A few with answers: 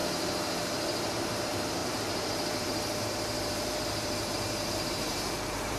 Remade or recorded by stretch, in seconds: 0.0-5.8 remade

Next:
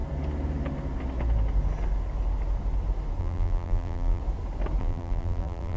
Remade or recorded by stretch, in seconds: 0.0-3.2 recorded; 3.2-4.2 remade; 4.2-4.8 recorded; 4.8-5.8 remade

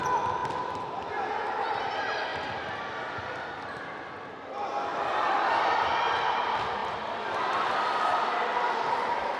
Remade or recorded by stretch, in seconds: 0.0-6.8 recorded; 6.8-9.4 remade

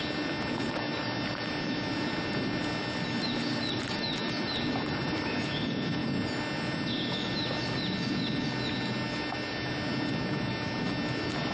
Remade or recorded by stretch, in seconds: 0.0-11.5 recorded

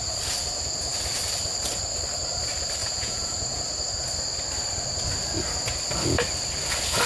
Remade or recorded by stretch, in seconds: 0.0-2.8 recorded; 2.8-3.6 remade; 3.6-7.1 recorded

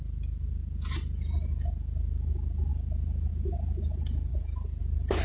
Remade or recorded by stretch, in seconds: 0.0-5.2 recorded